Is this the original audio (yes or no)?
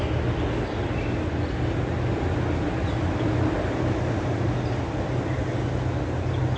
yes